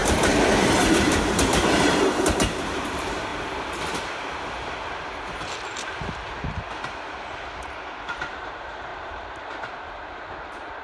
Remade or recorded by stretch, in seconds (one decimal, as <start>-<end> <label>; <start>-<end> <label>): 0.0-0.9 recorded; 0.9-3.3 remade; 3.3-8.0 recorded; 8.0-10.8 remade